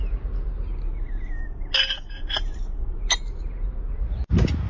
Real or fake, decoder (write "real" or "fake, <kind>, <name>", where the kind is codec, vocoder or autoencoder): real